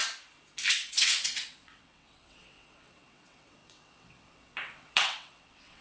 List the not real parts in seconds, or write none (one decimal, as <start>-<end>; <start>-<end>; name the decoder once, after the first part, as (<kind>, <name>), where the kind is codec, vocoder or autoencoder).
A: 0.7-5.8 (vocoder, WaveNeXt)